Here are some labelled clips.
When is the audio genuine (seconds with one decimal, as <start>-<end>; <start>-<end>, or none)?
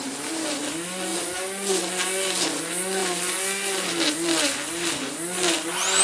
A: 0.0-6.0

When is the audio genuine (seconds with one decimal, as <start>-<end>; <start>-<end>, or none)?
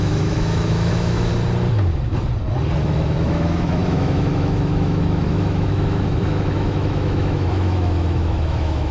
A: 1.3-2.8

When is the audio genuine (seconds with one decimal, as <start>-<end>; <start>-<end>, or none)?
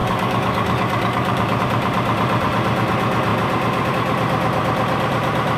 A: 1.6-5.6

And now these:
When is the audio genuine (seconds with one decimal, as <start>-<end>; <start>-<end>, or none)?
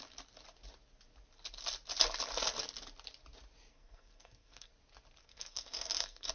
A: 0.0-3.7; 4.7-5.2